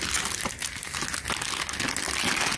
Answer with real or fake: real